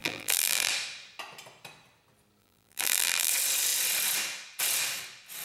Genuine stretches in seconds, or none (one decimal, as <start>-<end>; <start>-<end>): 0.7-2.4; 3.3-5.4